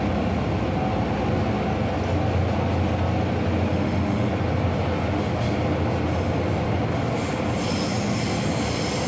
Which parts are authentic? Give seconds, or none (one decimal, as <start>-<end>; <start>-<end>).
0.0-3.7; 4.3-9.1